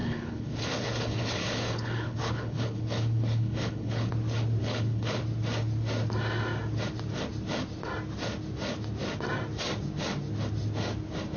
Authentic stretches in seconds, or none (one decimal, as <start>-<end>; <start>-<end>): 4.1-4.6; 5.2-11.4